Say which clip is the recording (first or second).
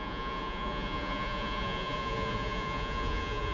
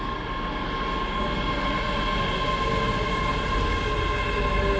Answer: second